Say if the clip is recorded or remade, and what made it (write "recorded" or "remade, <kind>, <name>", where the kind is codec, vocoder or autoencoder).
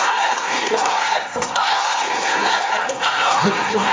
remade, codec, SNAC